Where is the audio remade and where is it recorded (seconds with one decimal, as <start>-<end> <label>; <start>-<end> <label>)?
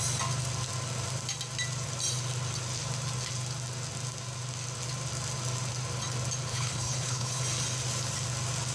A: 0.0-6.5 recorded; 6.5-7.4 remade; 7.4-8.7 recorded